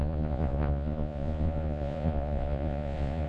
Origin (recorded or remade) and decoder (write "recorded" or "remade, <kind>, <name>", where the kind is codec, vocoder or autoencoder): remade, vocoder, Vocos